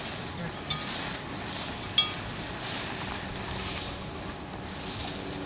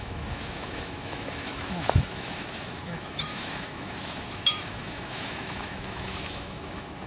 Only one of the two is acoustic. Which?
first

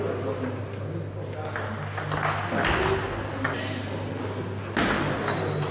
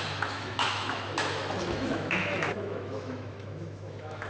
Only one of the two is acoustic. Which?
first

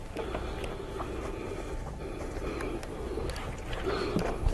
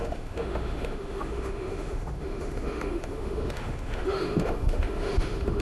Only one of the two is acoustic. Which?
first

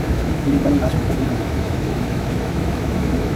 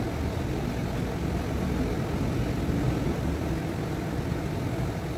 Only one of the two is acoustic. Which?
second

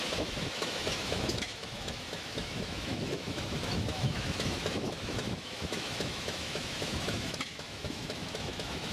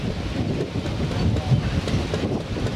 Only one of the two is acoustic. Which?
second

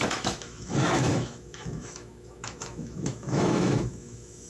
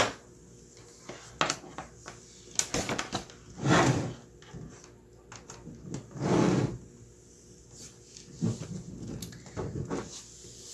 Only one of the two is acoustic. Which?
second